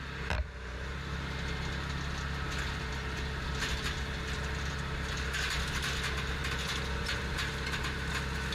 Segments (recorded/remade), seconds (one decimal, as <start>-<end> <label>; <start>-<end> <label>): 0.0-8.5 recorded